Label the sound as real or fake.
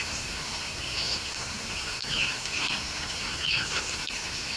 fake